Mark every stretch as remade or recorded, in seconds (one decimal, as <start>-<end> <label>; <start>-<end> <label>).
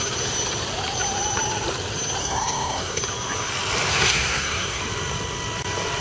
0.0-2.2 recorded; 2.2-3.0 remade; 3.0-3.9 recorded; 3.9-4.8 remade; 4.8-6.0 recorded